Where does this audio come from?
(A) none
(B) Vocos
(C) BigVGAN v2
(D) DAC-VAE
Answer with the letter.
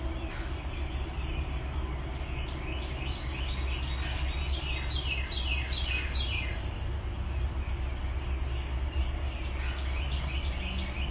A